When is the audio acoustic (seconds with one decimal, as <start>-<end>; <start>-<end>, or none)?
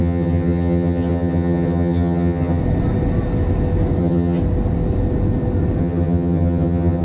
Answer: 2.6-4.0; 4.4-5.8